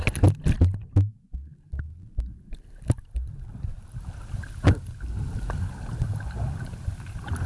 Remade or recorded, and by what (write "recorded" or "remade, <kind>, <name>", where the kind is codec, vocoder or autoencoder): recorded